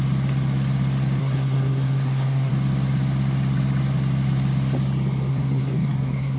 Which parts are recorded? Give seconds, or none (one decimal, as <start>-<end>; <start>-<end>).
0.0-1.2; 2.5-5.3